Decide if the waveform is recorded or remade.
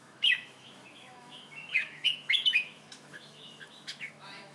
remade